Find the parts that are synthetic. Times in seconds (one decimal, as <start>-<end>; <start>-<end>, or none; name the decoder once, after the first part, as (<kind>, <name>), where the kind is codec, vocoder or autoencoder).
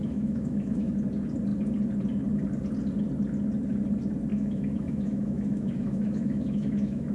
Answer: 0.0-0.9 (autoencoder, DAC-VAE); 4.3-7.1